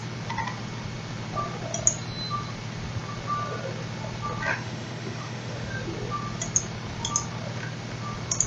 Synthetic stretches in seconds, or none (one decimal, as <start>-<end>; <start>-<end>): 4.5-5.7